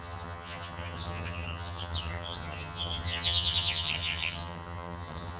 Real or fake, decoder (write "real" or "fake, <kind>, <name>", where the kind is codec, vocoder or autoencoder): fake, vocoder, HiFi-GAN